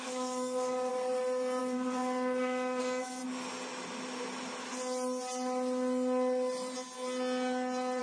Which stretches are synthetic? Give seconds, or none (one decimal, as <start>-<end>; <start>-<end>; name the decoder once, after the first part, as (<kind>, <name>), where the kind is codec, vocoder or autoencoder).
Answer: 0.0-0.9 (codec, DAC); 1.6-3.2